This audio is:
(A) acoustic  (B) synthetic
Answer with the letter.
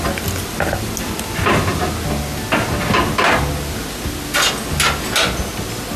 A